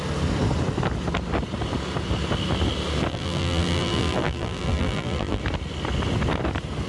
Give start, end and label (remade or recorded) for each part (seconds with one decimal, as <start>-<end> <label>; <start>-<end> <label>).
0.0-3.1 recorded; 3.1-5.4 remade; 5.4-6.9 recorded